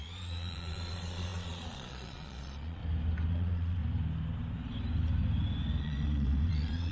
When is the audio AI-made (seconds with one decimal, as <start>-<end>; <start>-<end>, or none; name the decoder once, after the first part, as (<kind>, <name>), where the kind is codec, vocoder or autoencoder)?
0.0-2.8 (vocoder, Vocos); 3.3-3.8; 5.8-6.9